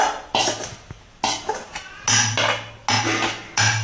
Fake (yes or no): no